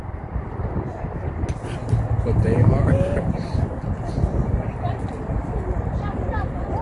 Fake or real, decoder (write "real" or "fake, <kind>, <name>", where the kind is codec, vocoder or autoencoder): real